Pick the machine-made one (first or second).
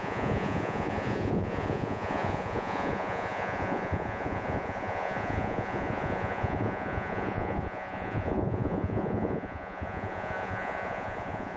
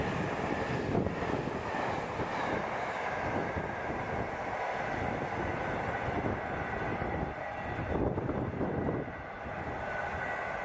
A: first